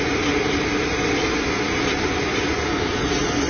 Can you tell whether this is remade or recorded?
recorded